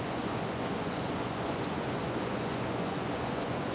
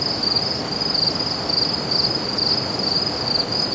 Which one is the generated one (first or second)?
first